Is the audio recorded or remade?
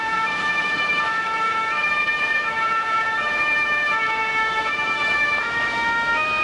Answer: remade